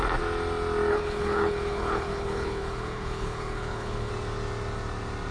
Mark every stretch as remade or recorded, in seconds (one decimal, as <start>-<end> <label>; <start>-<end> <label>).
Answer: 0.0-0.9 recorded; 0.9-4.1 remade; 4.1-5.3 recorded